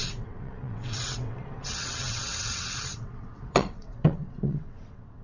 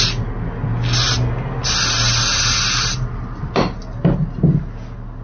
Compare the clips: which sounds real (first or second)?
second